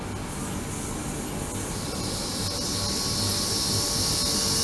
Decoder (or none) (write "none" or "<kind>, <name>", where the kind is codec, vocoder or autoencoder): none